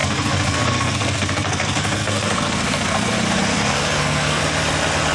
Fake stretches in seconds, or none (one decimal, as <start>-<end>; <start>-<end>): 0.0-3.1; 3.5-4.4